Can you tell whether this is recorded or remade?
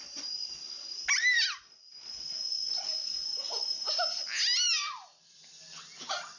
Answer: recorded